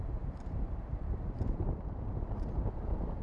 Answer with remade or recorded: remade